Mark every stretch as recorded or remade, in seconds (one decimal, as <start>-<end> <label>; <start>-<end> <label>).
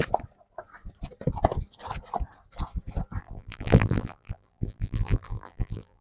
0.0-3.2 recorded; 3.2-6.0 remade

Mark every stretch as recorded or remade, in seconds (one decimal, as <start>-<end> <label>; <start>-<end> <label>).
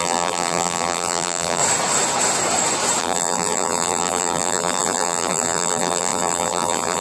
0.0-1.6 remade; 1.6-3.0 recorded; 3.0-7.0 remade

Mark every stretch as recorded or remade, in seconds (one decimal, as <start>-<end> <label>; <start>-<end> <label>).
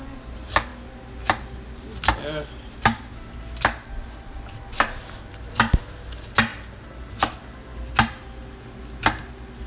0.0-9.7 recorded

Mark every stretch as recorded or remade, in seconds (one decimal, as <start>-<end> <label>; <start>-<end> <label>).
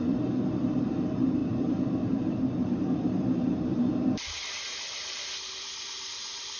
0.0-6.6 remade